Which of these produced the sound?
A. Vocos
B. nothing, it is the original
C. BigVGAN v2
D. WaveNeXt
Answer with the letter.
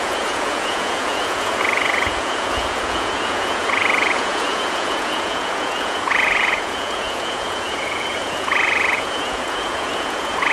A